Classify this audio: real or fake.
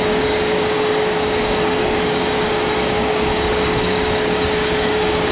fake